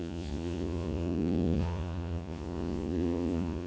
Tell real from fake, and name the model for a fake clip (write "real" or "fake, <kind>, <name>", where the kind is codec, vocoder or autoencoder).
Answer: fake, vocoder, Vocos